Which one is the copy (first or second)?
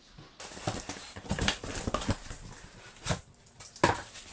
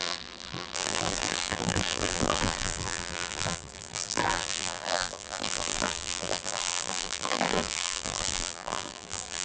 second